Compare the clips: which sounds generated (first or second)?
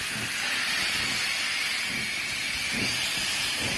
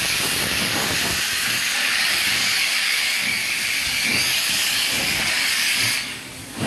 second